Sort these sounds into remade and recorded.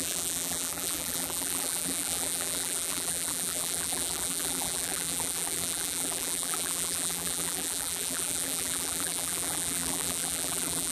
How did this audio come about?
remade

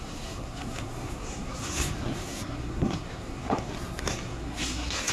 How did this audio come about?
remade